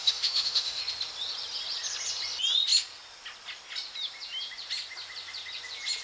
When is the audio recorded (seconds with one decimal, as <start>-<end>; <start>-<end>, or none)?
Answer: 0.8-6.0